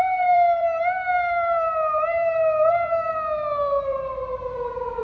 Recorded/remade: remade